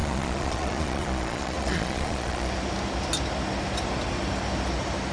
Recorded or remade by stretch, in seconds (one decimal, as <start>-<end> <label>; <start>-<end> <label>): 0.0-2.5 remade; 2.5-5.1 recorded